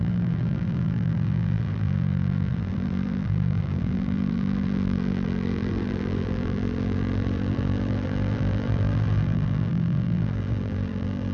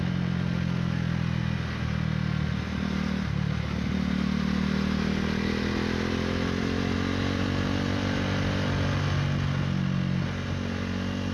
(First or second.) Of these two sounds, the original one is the second